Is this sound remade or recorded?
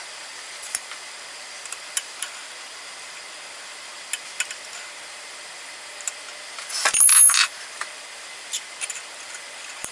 recorded